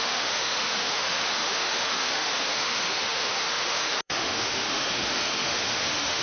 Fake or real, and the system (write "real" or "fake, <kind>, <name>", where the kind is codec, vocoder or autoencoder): fake, autoencoder, DAC-VAE